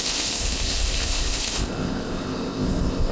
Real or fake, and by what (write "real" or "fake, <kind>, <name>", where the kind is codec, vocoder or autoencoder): fake, codec, ZipCodec